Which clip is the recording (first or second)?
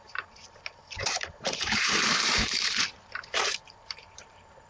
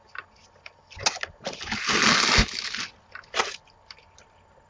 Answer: second